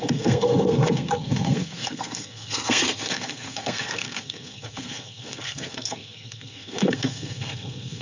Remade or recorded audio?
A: remade